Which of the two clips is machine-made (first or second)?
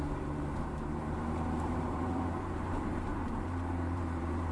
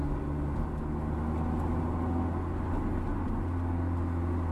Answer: first